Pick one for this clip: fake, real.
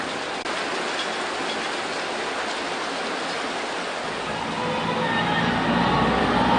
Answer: real